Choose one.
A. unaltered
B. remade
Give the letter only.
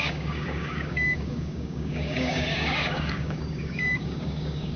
B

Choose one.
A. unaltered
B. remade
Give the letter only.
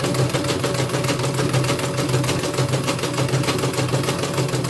A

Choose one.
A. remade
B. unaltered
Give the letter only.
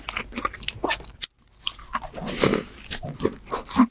B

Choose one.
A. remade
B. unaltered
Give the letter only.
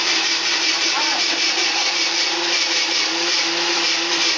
A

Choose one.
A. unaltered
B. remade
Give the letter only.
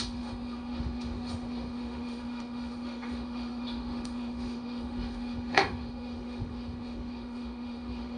B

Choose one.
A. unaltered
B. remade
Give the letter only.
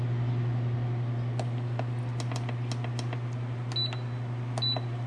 A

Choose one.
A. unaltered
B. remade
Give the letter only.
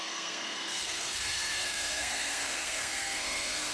B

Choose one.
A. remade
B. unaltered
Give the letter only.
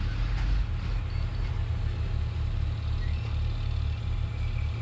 B